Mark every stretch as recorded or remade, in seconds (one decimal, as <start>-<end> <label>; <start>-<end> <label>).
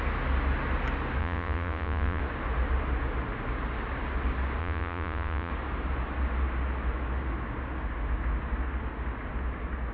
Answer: 0.0-1.2 recorded; 1.2-2.2 remade; 2.2-4.6 recorded; 4.6-5.5 remade; 5.5-9.9 recorded